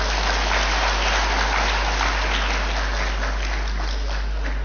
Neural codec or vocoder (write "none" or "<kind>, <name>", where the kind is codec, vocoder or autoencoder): none